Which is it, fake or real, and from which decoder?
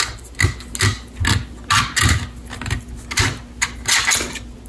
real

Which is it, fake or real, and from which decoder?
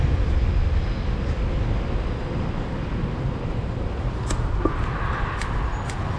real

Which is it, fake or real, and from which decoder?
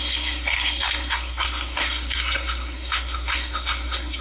fake, codec, SNAC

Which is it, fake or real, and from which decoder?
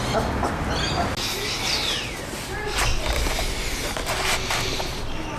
real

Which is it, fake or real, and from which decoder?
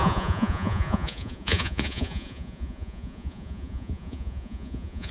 fake, vocoder, Vocos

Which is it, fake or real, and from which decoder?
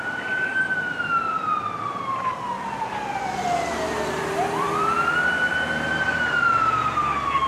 fake, vocoder, BigVGAN v2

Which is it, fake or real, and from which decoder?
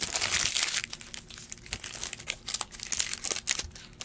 real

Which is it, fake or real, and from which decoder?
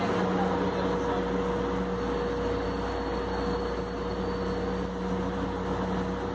real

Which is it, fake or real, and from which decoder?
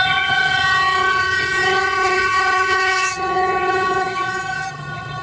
fake, vocoder, HiFi-GAN